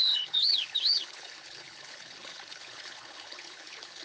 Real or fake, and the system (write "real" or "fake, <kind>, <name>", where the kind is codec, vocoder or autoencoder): fake, codec, HILCodec